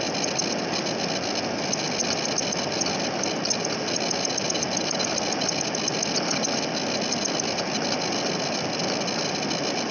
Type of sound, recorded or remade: recorded